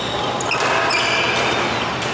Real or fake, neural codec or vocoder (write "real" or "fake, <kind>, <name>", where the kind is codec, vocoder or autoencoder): real